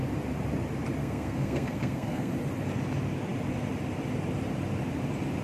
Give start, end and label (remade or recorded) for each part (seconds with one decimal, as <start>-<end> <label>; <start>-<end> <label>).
0.0-1.0 recorded; 1.0-2.3 remade; 2.3-5.4 recorded